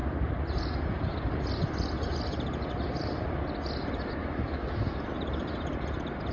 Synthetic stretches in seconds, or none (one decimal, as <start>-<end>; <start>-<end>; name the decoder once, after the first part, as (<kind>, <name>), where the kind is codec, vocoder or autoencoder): 4.2-5.2 (autoencoder, DAC-VAE)